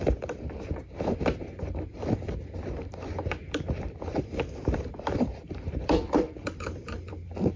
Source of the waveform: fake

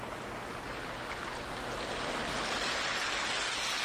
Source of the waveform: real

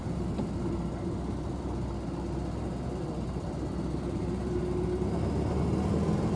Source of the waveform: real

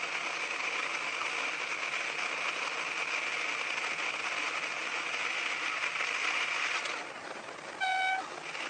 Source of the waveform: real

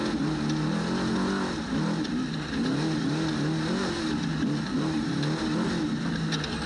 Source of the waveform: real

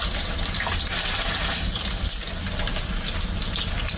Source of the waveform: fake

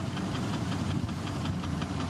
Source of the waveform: fake